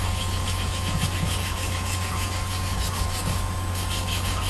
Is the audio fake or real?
fake